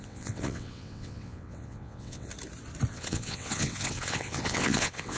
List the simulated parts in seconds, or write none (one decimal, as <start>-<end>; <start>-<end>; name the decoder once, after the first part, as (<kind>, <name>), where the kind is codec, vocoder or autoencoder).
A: 0.0-2.3 (vocoder, WaveNeXt); 2.9-5.2

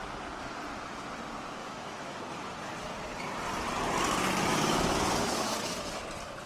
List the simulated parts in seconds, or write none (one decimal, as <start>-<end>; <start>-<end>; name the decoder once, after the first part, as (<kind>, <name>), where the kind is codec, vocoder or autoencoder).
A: 1.6-2.2 (autoencoder, DAC-VAE); 4.5-6.0